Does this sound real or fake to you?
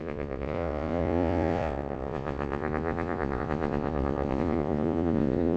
fake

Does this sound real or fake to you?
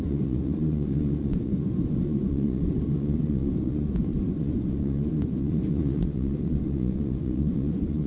fake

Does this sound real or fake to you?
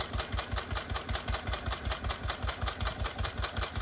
real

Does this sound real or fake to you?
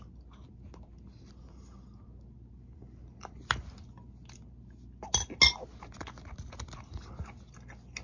real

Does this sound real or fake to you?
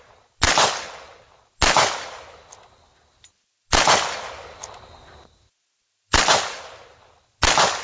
real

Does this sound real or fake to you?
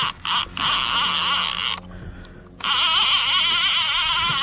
real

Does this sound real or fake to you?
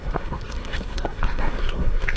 fake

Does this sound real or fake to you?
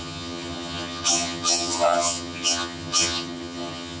fake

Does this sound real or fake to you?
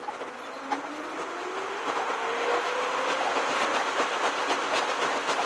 real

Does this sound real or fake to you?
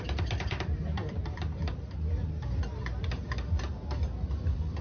real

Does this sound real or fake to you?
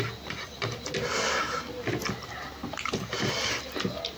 real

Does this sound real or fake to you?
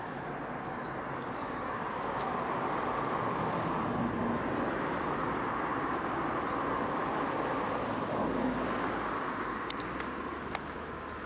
real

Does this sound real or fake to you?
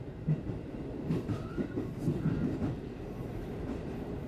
fake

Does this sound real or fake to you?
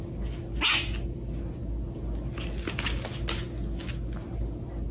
real